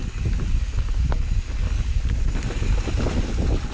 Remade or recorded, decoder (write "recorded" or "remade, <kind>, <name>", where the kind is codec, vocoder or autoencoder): recorded